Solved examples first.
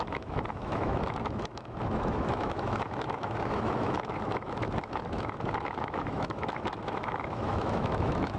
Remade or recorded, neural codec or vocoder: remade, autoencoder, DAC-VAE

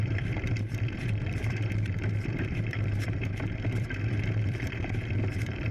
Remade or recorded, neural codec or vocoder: remade, vocoder, BigVGAN v2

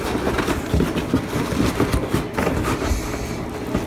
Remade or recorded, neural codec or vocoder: recorded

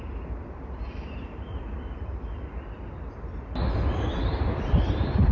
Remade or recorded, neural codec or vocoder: recorded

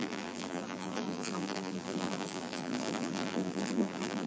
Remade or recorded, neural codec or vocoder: remade, vocoder, BigVGAN v2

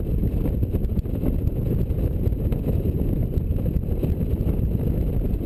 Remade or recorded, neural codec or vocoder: recorded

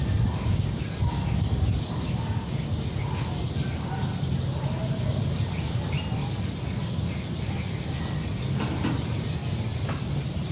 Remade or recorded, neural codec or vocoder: recorded